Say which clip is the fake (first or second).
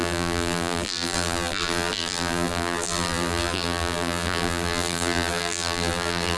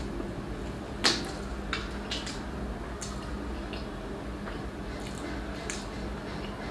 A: first